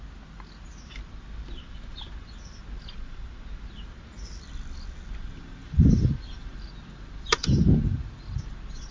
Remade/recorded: recorded